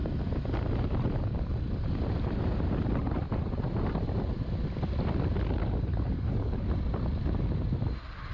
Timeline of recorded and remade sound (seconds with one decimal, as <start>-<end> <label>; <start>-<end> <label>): 0.0-5.9 recorded; 5.9-6.7 remade; 6.7-8.3 recorded